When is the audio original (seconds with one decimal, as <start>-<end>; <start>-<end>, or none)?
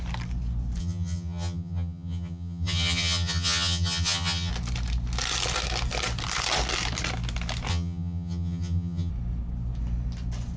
0.0-0.8; 4.5-7.7; 9.1-10.6